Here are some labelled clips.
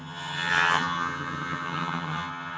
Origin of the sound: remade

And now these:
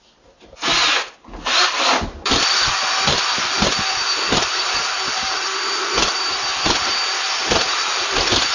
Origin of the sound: recorded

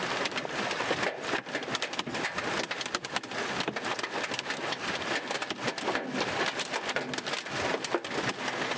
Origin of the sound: recorded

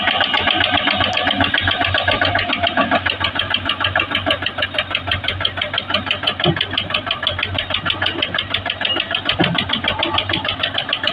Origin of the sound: recorded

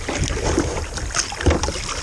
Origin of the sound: recorded